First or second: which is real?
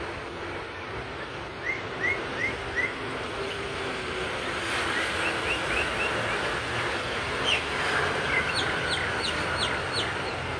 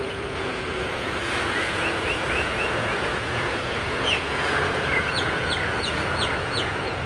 first